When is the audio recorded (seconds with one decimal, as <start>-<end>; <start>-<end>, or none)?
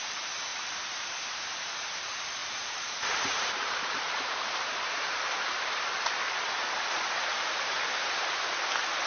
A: 0.0-0.5; 2.0-2.4; 5.2-9.1